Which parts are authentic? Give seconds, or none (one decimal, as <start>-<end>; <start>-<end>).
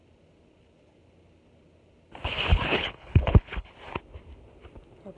0.0-2.5; 3.7-5.2